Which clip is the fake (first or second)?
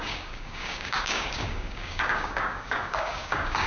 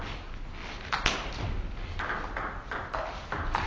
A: first